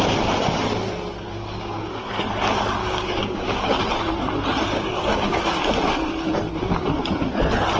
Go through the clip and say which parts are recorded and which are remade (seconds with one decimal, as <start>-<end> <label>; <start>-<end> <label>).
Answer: 0.0-1.3 recorded; 1.3-1.9 remade; 1.9-2.8 recorded; 2.8-3.8 remade; 3.8-4.7 recorded; 4.7-5.5 remade; 5.5-7.8 recorded